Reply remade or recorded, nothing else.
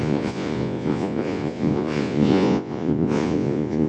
remade